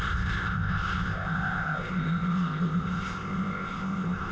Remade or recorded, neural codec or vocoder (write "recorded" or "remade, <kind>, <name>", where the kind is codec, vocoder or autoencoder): remade, codec, ZipCodec